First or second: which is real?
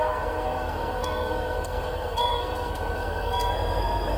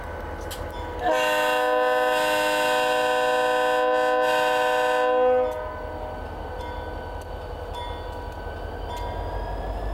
second